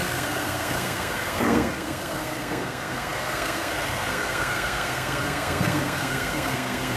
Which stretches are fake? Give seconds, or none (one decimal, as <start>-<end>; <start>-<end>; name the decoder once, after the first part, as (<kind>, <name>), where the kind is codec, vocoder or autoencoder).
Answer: 0.0-7.0 (codec, SNAC)